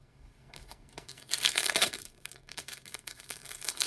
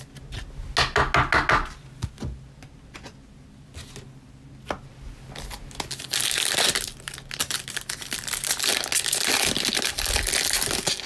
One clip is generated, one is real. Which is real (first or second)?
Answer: second